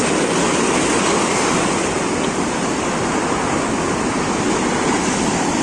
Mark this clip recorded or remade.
recorded